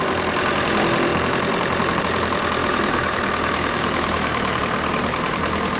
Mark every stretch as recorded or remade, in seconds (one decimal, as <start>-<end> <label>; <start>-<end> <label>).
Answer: 0.0-2.6 recorded; 2.6-4.6 remade; 4.6-5.8 recorded